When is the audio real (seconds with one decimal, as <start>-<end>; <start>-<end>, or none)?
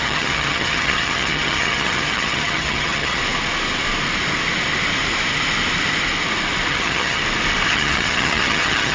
3.2-6.7; 7.2-7.7